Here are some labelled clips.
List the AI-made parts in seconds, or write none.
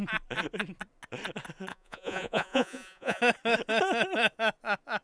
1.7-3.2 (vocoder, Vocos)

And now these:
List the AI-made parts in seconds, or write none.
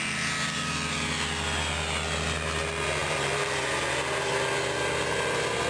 3.0-4.0 (vocoder, BigVGAN v2)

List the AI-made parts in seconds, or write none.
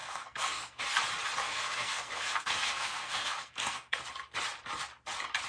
0.0-0.8 (codec, SNAC); 1.4-4.0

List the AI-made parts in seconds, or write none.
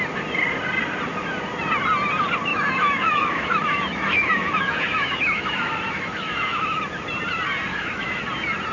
2.5-6.8 (autoencoder, DAC-VAE); 7.7-8.2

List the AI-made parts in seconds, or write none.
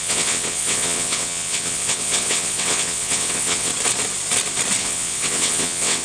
0.0-3.7 (vocoder, WaveNeXt); 4.8-6.0